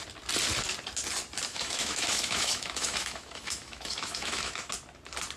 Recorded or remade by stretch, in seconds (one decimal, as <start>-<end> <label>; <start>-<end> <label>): 0.0-1.5 recorded; 1.5-4.7 remade; 4.7-5.4 recorded